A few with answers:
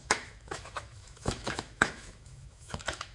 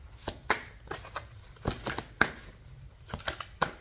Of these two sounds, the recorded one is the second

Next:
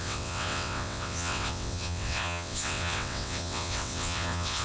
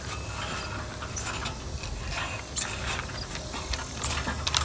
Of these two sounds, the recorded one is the second